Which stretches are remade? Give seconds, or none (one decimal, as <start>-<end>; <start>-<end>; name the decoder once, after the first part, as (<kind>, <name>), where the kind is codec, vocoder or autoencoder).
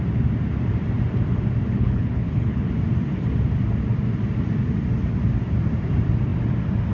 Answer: 1.7-2.7 (codec, HILCodec)